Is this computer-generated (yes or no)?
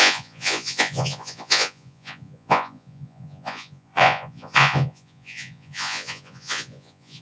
yes